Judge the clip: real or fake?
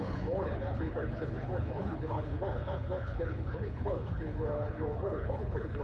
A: fake